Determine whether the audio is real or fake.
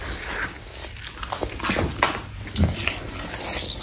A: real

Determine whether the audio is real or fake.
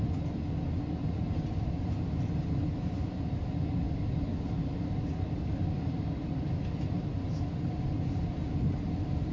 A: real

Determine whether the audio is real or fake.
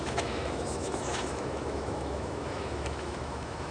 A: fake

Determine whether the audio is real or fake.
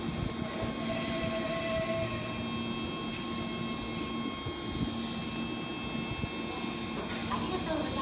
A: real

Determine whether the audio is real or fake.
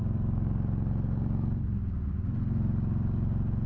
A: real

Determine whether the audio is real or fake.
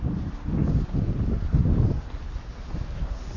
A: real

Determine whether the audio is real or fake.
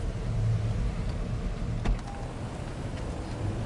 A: real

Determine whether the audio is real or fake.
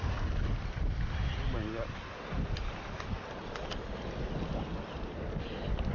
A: real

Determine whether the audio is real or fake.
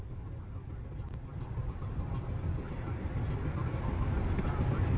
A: real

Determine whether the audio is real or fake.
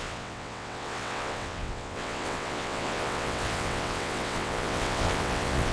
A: fake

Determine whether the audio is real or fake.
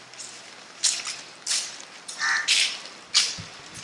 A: real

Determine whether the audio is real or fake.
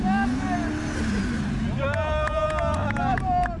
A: real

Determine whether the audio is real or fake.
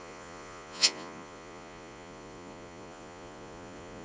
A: fake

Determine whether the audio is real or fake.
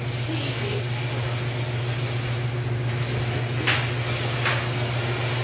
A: real